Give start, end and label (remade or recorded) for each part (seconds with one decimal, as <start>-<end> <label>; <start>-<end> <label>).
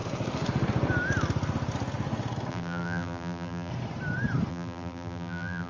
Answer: 0.0-2.5 recorded; 2.5-3.7 remade; 3.7-4.5 recorded; 4.5-5.7 remade